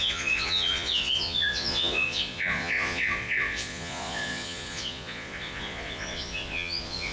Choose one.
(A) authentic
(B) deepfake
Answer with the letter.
B